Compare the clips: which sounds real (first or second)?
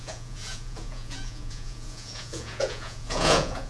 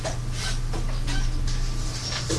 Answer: second